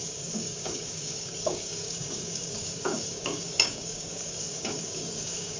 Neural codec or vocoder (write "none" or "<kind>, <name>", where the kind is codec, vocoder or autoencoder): codec, DAC